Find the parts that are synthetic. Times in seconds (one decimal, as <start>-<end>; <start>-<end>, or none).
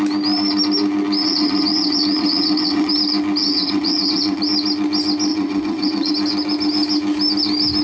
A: 1.2-2.9; 3.4-4.4; 5.3-6.1